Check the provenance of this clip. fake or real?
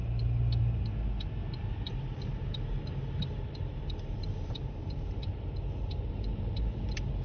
real